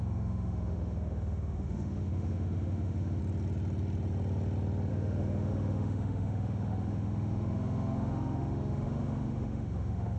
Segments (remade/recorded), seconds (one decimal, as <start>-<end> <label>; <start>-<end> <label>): 0.0-3.2 remade; 3.2-4.9 recorded; 4.9-10.2 remade